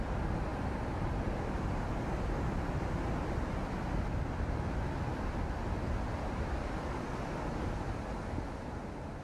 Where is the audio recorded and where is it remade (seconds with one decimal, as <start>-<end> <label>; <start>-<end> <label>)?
0.0-9.2 recorded